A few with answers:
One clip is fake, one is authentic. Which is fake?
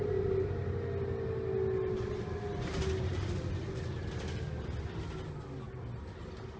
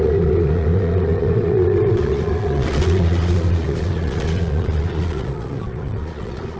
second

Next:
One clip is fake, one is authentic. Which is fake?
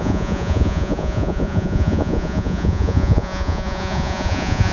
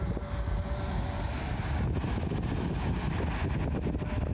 first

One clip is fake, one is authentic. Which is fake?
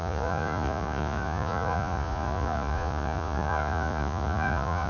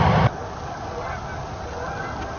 first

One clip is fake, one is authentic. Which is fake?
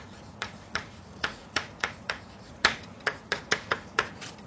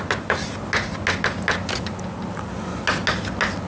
first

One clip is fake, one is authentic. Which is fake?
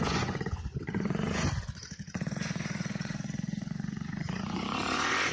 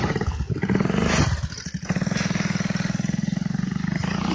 first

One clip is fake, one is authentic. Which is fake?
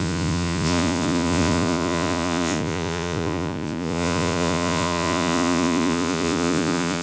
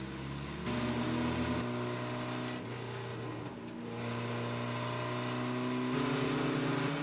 first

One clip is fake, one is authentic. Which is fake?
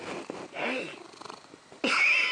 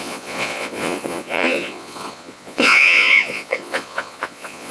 second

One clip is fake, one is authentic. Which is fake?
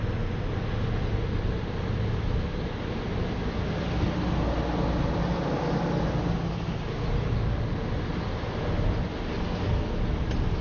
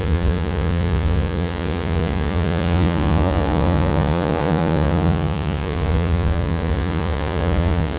second